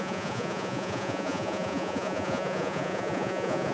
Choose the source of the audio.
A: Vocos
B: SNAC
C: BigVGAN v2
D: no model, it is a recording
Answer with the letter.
A